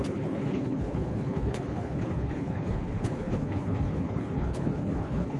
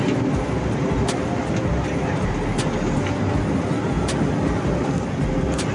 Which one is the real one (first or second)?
second